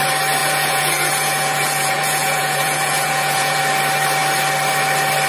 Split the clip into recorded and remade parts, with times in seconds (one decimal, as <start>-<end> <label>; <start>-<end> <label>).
0.0-0.4 recorded; 0.4-3.6 remade; 3.6-5.3 recorded